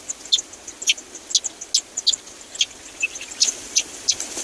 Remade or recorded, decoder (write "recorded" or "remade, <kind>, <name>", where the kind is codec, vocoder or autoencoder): recorded